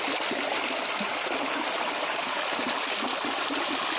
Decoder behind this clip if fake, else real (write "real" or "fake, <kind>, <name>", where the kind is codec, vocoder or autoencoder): real